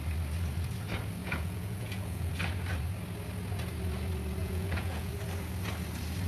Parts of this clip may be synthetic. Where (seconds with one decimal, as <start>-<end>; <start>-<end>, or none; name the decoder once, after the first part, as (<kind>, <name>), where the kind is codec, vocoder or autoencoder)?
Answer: 1.2-2.3 (vocoder, Vocos); 4.4-5.1